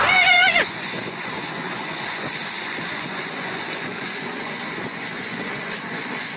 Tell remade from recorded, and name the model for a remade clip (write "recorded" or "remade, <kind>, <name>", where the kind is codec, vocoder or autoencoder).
remade, vocoder, Vocos